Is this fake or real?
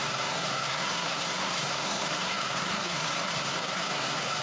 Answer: fake